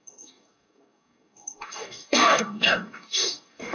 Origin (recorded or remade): remade